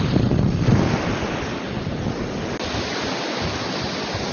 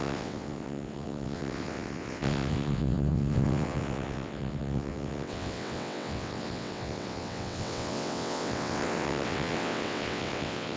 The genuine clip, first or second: first